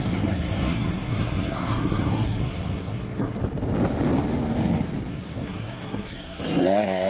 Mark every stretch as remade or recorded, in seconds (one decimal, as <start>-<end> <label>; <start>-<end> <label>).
0.0-3.4 remade; 3.4-5.1 recorded; 5.1-7.1 remade